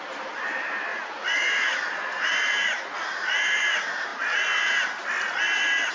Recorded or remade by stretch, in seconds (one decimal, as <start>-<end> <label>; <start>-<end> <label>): 0.0-5.9 recorded